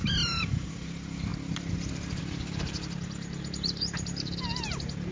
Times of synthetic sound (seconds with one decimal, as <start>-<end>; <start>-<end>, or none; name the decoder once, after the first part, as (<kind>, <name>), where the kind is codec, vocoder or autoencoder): none